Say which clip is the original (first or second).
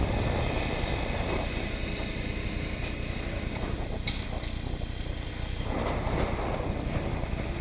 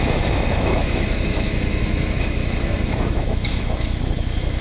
first